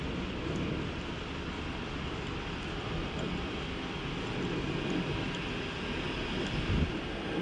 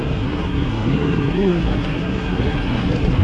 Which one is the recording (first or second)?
first